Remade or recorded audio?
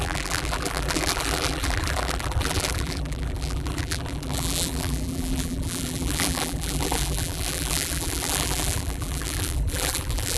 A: remade